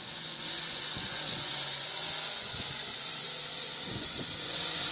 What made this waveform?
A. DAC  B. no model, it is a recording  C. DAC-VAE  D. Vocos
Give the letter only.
D